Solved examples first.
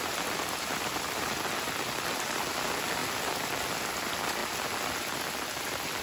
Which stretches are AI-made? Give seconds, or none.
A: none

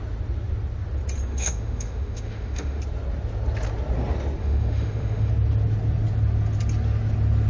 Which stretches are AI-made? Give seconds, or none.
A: 1.3-2.8 (autoencoder, DAC-VAE); 4.4-5.3

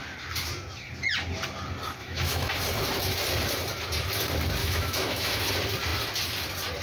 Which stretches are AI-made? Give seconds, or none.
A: 2.0-2.5 (autoencoder, DAC-VAE); 4.6-5.4

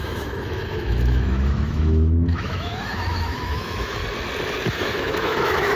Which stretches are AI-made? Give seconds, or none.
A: 0.0-4.0 (autoencoder, DAC-VAE); 4.7-5.8